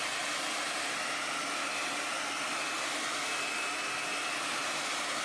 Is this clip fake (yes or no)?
no